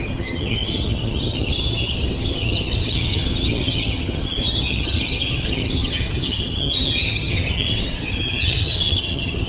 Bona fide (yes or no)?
no